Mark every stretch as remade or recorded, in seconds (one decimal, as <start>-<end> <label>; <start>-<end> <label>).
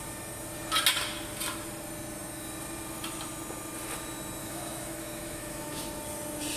0.0-4.4 recorded; 4.4-5.9 remade; 5.9-6.6 recorded